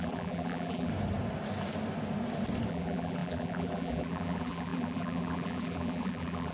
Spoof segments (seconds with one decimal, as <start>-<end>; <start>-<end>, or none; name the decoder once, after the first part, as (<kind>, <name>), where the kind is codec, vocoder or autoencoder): 0.0-0.9 (vocoder, BigVGAN v2); 2.7-6.5